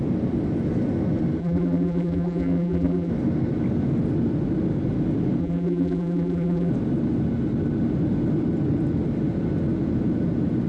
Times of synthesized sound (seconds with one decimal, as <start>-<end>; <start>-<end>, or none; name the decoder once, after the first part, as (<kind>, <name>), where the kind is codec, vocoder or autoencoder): 1.4-3.1 (vocoder, BigVGAN v2); 5.4-6.7